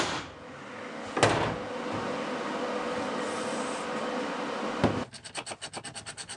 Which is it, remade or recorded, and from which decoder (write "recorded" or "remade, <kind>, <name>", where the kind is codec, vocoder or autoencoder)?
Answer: recorded